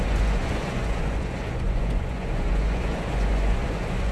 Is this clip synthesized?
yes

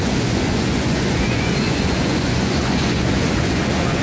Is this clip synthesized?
yes